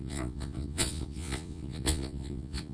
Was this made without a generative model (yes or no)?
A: no